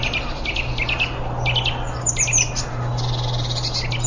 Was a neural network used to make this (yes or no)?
no